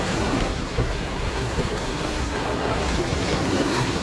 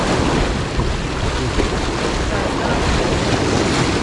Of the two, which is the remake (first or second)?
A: first